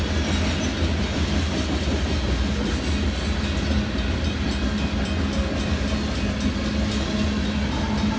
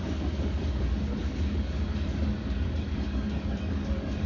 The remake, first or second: second